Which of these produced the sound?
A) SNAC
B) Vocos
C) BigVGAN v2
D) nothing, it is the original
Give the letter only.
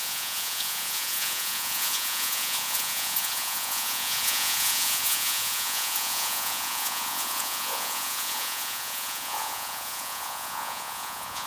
B